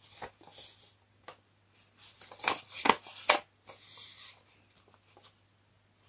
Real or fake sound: real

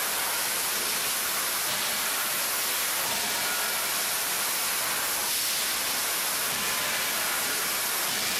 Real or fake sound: real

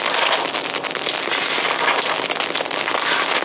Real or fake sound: real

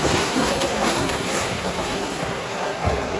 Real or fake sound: fake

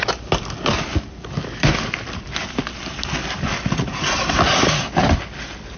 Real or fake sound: real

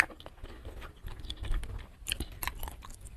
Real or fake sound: real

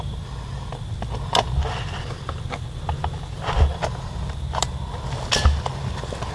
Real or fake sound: real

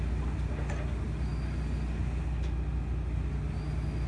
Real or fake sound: real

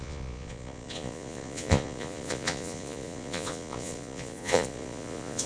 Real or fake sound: fake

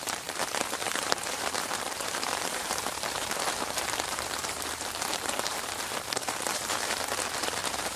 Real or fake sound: fake